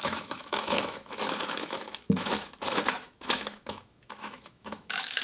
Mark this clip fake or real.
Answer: fake